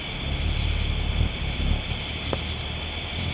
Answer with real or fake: real